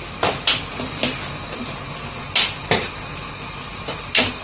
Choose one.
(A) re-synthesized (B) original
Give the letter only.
B